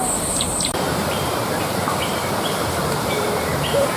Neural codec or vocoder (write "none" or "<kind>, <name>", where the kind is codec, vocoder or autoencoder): vocoder, BigVGAN v2